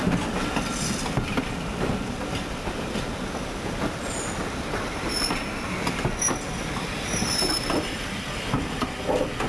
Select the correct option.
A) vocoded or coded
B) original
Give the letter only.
B